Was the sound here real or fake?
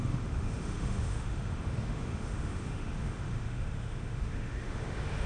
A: fake